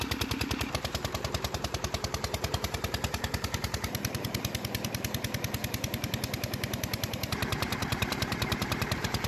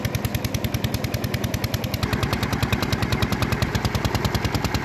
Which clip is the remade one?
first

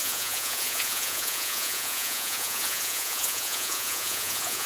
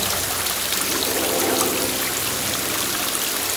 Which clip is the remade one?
first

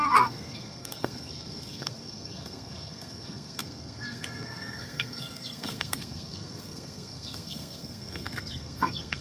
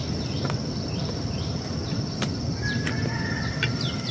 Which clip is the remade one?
first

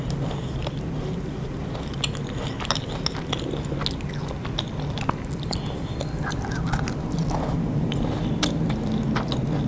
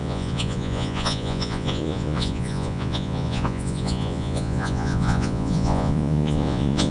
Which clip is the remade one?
second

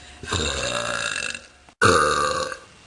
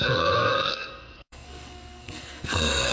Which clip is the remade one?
second